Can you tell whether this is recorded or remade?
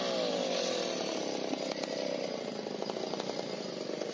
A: recorded